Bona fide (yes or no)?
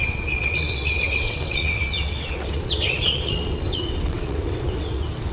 no